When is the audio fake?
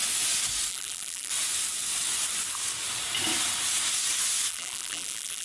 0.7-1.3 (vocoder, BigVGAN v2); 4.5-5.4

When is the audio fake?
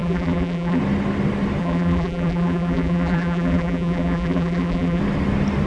0.0-0.8 (vocoder, BigVGAN v2); 1.6-5.0